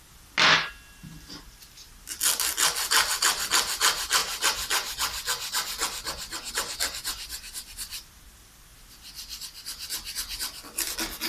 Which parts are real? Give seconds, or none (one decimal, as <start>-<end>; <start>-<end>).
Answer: 0.0-11.3